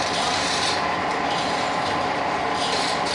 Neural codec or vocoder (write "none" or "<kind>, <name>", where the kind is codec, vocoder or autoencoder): vocoder, BigVGAN v2